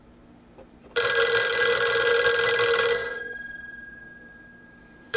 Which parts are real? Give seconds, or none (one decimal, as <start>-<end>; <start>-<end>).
1.5-2.1